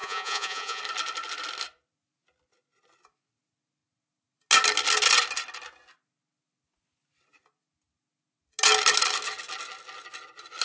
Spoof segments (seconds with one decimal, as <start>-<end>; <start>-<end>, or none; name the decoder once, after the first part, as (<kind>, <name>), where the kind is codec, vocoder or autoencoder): 0.0-0.8 (vocoder, Vocos)